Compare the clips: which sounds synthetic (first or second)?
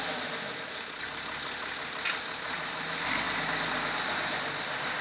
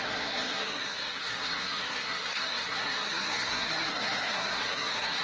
second